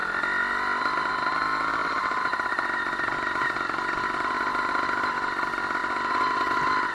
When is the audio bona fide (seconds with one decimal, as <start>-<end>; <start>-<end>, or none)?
0.0-6.9